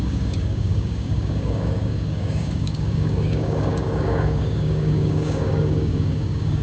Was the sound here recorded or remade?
remade